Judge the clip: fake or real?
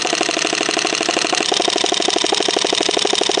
real